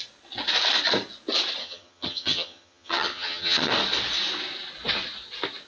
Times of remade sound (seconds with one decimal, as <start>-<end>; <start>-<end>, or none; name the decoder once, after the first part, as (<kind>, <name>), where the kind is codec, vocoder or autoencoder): 1.6-3.7 (vocoder, HiFi-GAN)